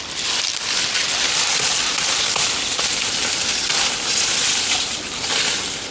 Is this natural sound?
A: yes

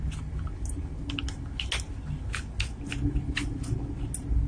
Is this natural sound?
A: yes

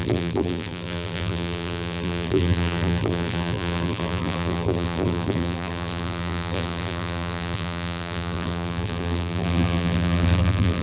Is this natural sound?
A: no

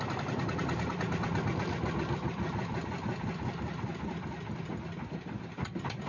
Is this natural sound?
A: no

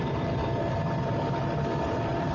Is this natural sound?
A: no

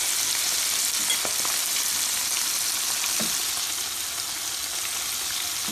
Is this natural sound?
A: yes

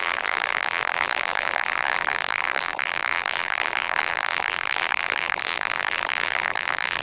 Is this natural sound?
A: no